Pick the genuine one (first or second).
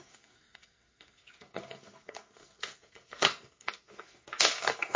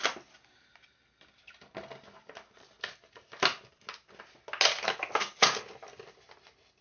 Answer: second